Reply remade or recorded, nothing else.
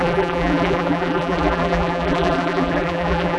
remade